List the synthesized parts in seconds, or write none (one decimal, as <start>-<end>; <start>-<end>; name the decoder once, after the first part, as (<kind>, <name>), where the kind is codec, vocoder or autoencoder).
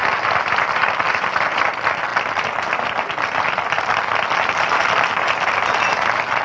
none